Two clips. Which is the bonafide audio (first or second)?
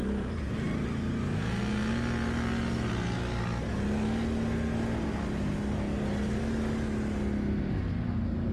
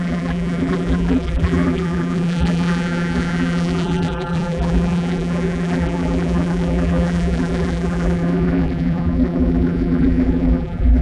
first